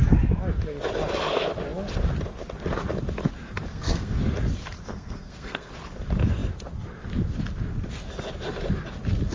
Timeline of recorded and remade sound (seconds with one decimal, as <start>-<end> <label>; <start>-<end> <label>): 0.0-3.7 recorded; 3.7-4.2 remade; 4.2-4.9 recorded; 4.9-5.7 remade; 5.7-9.3 recorded